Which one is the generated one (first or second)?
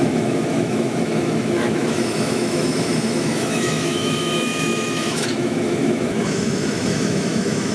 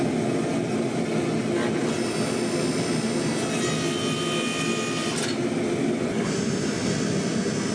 first